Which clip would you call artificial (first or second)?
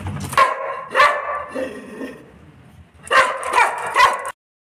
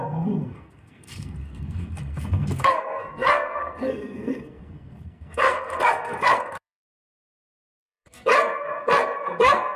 second